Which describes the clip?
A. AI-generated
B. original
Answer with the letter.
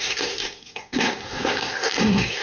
A